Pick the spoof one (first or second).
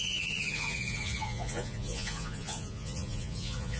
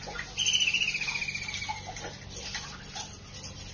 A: first